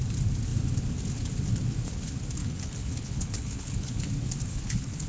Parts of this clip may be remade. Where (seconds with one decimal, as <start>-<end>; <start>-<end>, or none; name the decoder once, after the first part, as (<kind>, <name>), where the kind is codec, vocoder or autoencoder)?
2.4-4.1 (codec, HILCodec); 4.5-5.1